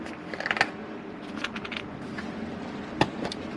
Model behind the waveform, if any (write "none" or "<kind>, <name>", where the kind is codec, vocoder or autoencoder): none